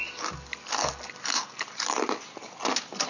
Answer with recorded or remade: recorded